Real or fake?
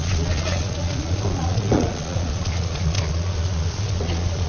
fake